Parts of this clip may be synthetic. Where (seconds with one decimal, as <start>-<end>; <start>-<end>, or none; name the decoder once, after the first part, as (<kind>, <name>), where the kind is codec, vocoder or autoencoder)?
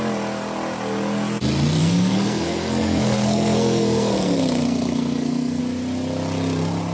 1.8-5.6 (codec, SNAC)